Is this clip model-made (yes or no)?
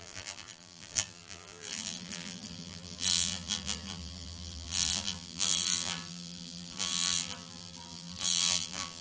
yes